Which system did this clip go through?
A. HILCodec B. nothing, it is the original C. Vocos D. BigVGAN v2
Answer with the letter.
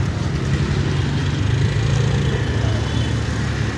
B